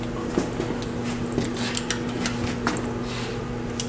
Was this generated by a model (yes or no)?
no